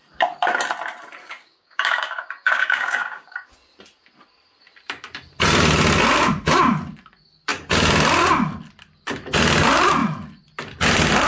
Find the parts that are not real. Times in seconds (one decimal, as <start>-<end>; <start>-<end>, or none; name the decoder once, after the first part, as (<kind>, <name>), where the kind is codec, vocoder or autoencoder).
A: 1.2-3.5 (codec, DAC)